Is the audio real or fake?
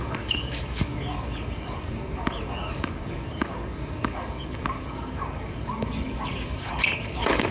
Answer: fake